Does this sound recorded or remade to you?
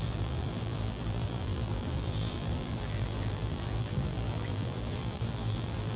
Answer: remade